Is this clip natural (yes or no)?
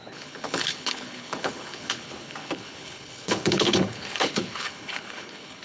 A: no